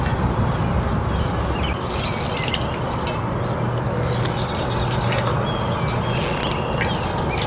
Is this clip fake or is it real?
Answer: real